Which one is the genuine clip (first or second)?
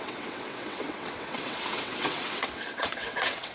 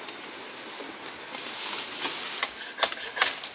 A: second